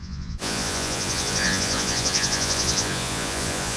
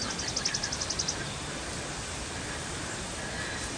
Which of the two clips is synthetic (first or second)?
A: first